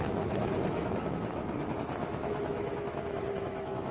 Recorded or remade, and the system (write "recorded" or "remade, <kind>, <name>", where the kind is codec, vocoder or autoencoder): remade, autoencoder, DAC-VAE